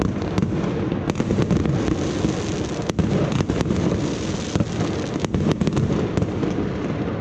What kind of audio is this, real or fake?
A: real